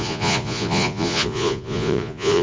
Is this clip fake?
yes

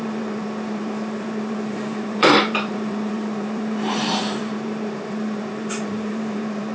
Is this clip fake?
yes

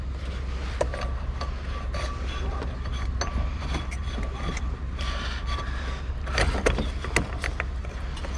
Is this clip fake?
no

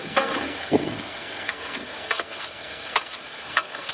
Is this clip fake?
yes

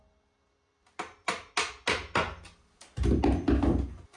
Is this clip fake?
no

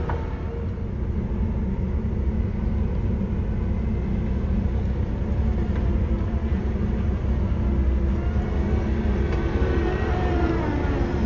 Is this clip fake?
no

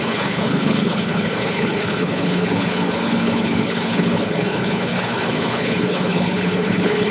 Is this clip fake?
yes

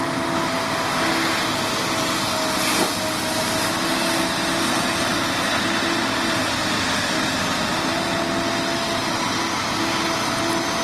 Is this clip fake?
no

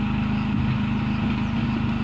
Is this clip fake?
no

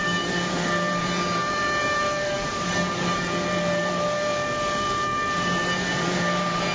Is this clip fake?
yes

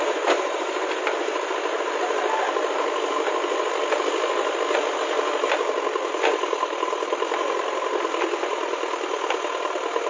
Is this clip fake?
no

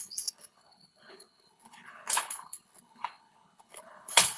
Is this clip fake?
yes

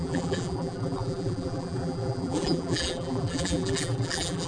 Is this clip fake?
yes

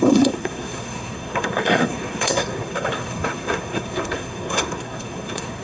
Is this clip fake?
yes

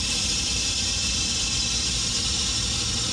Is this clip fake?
no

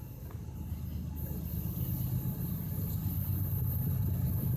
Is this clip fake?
no